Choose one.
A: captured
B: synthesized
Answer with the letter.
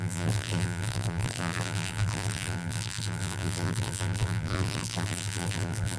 B